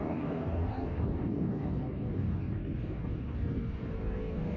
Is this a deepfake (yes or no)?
yes